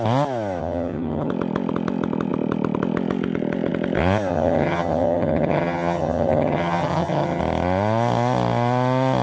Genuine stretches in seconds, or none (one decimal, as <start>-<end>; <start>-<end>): 0.0-0.6; 1.3-4.3; 7.4-9.2